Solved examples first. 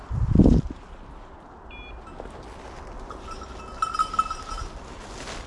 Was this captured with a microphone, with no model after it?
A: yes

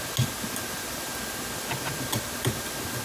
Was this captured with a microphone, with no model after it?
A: yes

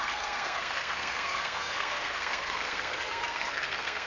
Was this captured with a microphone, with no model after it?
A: no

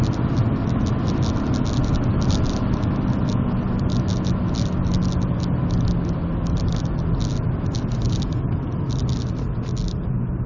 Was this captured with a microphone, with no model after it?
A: yes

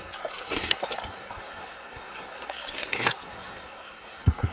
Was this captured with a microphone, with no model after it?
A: no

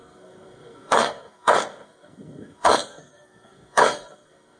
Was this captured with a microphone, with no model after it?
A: no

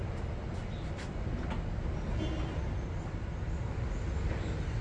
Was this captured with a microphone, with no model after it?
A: yes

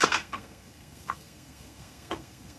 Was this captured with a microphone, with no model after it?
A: no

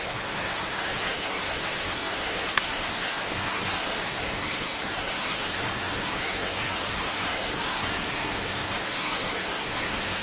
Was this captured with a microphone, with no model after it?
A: no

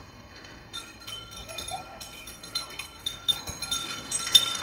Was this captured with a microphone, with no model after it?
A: no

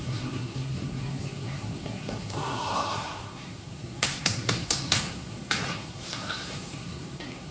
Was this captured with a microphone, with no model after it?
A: no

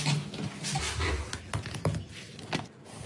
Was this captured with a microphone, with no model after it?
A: yes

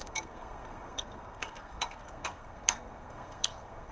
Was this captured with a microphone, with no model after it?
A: no